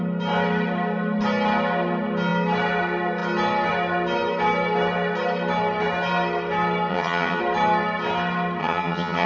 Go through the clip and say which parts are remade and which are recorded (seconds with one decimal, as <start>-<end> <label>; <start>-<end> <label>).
0.0-6.9 recorded; 6.9-7.4 remade; 7.4-8.6 recorded; 8.6-9.3 remade